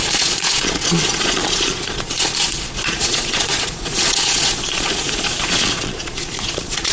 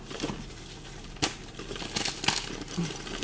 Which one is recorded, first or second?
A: second